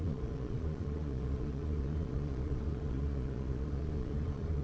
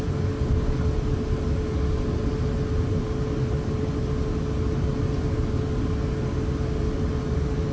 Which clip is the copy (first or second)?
first